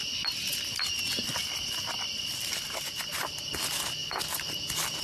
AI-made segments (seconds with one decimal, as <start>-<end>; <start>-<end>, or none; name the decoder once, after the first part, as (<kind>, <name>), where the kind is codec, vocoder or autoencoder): 4.0-4.6 (vocoder, BigVGAN v2)